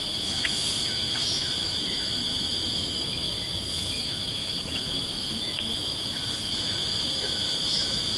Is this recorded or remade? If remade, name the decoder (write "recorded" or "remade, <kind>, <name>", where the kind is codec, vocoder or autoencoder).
remade, autoencoder, DAC-VAE